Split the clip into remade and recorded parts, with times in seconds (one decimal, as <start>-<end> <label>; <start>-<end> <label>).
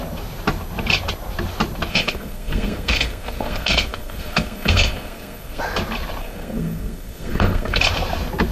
0.0-1.9 recorded; 1.9-5.6 remade; 5.6-6.2 recorded; 6.2-7.8 remade; 7.8-8.5 recorded